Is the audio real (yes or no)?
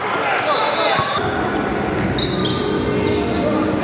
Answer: yes